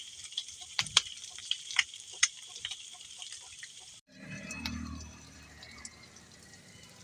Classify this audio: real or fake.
fake